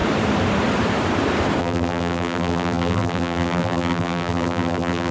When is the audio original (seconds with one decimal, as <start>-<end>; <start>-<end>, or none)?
0.0-1.6